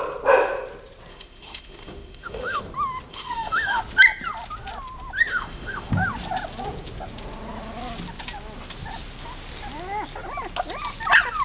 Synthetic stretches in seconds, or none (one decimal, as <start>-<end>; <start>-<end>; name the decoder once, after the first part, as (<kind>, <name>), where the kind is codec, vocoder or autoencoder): 1.1-2.6 (autoencoder, DAC-VAE); 3.1-3.8; 5.3-5.9